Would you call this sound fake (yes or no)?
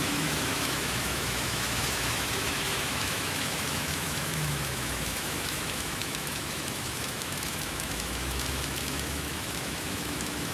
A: yes